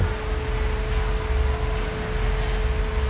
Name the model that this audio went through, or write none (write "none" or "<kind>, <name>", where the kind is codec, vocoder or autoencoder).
none